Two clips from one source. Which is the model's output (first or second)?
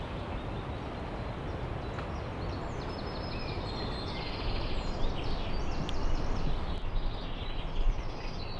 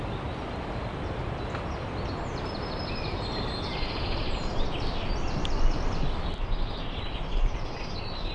second